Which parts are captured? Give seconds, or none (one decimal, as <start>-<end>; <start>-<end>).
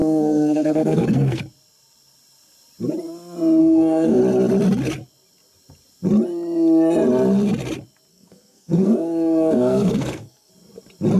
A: 1.4-3.6; 4.2-8.1; 10.5-11.2